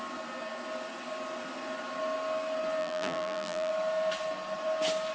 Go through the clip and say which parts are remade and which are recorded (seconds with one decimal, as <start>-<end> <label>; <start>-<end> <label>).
0.0-2.8 recorded; 2.8-3.7 remade; 3.7-5.1 recorded